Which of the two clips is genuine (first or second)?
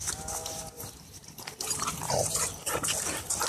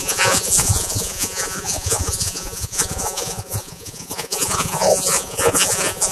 first